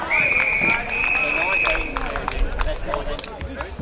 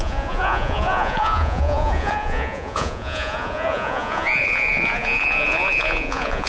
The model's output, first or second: second